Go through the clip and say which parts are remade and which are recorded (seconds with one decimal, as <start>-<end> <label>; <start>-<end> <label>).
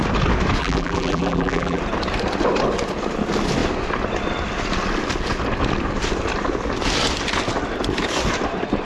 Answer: 0.0-0.6 recorded; 0.6-1.8 remade; 1.8-8.8 recorded